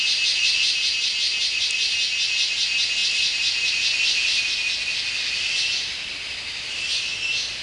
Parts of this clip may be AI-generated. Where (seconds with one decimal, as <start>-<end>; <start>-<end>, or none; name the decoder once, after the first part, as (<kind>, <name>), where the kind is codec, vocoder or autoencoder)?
0.0-1.7 (vocoder, BigVGAN v2)